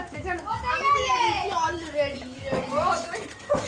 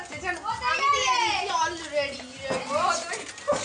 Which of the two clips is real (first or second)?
second